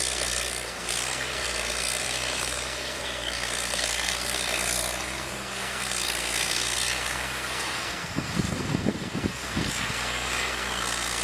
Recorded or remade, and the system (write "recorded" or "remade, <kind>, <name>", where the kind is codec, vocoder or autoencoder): remade, codec, SNAC